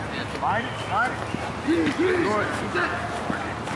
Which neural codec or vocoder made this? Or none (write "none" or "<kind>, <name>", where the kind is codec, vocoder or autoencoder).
none